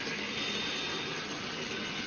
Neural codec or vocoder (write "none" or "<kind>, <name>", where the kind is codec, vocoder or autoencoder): none